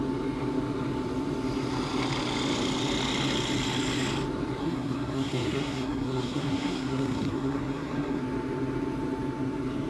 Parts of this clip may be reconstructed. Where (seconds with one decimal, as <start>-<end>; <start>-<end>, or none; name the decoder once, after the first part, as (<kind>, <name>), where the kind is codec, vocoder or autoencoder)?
4.6-8.2 (codec, SNAC)